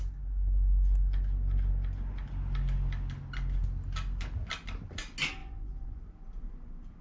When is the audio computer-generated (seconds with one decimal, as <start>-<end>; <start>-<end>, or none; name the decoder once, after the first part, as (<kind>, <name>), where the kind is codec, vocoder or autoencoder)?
5.4-6.0 (vocoder, Vocos)